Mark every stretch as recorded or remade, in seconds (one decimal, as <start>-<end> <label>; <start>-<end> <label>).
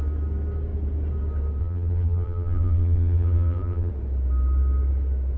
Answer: 0.0-1.6 recorded; 1.6-3.9 remade; 3.9-5.4 recorded